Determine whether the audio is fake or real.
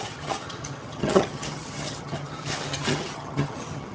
fake